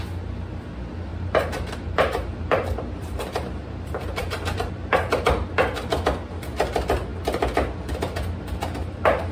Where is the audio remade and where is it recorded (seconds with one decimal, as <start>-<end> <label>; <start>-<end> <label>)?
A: 0.0-1.1 recorded; 1.1-4.7 remade; 4.7-9.3 recorded